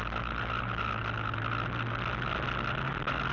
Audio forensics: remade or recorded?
recorded